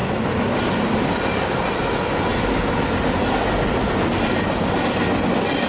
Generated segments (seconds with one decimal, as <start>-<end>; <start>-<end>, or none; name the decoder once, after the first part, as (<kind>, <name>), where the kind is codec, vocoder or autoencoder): none